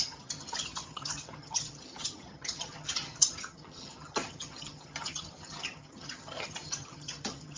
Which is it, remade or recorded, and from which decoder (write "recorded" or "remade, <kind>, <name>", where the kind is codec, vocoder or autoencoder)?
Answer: remade, vocoder, HiFi-GAN